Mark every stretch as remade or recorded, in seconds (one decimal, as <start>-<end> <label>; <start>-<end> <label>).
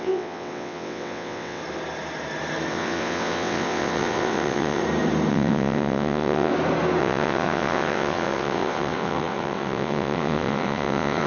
0.0-1.6 remade; 1.6-2.7 recorded; 2.7-4.8 remade; 4.8-5.3 recorded; 5.3-6.5 remade; 6.5-7.0 recorded; 7.0-11.3 remade